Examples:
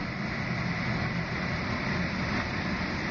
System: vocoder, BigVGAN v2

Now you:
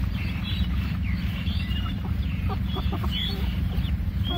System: vocoder, BigVGAN v2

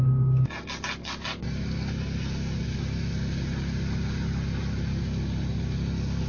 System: none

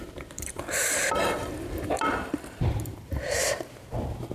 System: vocoder, BigVGAN v2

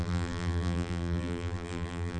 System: vocoder, BigVGAN v2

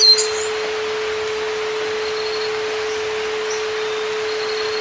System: none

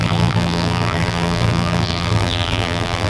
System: vocoder, BigVGAN v2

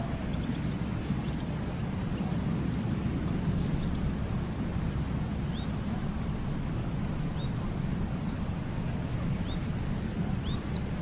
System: none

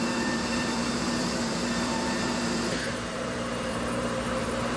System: vocoder, BigVGAN v2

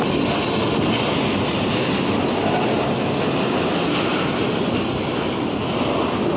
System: none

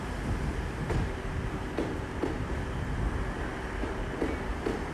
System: none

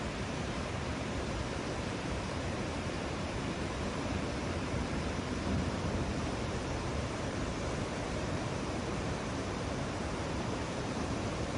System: vocoder, BigVGAN v2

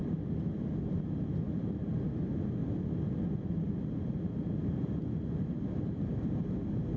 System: none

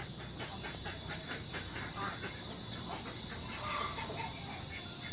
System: none